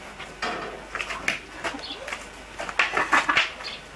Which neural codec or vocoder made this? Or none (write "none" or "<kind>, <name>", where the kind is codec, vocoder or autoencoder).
none